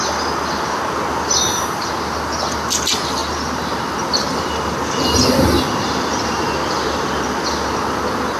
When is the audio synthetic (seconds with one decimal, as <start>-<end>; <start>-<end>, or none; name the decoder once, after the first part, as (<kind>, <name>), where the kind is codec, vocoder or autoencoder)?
none